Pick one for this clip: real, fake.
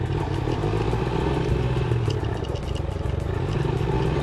real